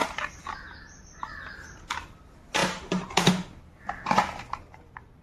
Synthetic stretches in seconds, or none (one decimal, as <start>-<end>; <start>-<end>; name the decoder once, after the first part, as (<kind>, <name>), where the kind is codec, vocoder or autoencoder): 2.6-3.3 (vocoder, BigVGAN v2)